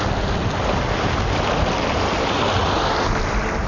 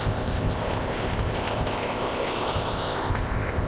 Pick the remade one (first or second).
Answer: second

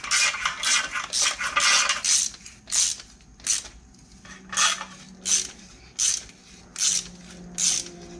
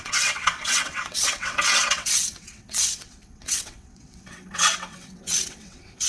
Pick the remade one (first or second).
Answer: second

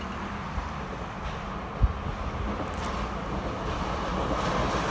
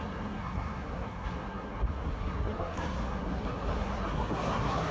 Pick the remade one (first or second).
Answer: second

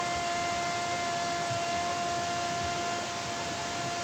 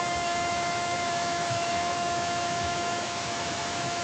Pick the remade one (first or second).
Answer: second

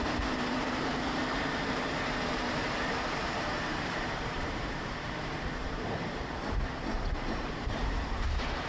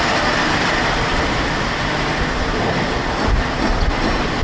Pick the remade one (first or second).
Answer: first